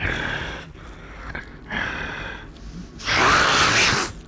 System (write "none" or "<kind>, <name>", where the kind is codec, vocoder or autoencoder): none